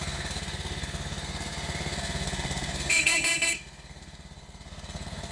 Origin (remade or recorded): remade